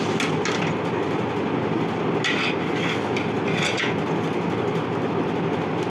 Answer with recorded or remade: recorded